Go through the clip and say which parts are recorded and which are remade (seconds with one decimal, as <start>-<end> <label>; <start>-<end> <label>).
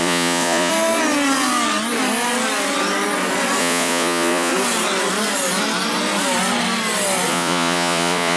0.0-0.7 remade; 0.7-3.6 recorded; 3.6-4.5 remade; 4.5-7.3 recorded; 7.3-8.4 remade